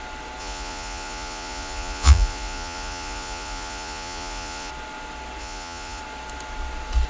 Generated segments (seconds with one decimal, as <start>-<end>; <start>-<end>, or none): 0.4-4.7; 5.4-6.0